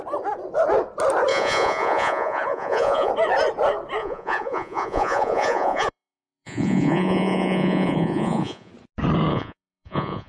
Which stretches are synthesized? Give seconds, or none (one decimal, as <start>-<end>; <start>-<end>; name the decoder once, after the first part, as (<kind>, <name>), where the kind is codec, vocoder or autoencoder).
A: 1.3-3.1 (vocoder, Vocos); 4.0-8.7; 9.3-10.3

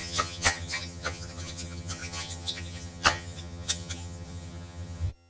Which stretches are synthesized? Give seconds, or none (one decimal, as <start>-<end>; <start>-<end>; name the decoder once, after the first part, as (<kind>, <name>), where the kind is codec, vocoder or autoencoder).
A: 0.0-5.3 (vocoder, HiFi-GAN)

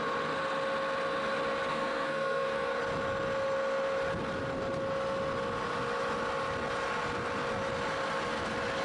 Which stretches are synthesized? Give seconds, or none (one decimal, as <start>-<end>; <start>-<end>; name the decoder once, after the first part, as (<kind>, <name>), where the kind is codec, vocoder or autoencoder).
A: 1.7-2.8 (codec, SNAC)

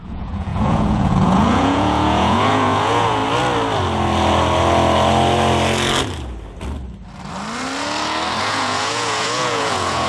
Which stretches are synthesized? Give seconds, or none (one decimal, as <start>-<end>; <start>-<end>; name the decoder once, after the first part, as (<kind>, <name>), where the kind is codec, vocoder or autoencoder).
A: 0.0-3.2 (vocoder, Vocos); 8.4-10.1